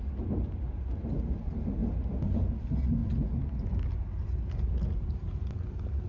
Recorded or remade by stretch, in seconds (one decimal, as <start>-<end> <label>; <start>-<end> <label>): 0.0-6.1 recorded